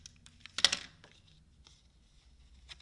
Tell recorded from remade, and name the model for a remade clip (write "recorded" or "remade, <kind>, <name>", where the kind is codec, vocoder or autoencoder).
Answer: recorded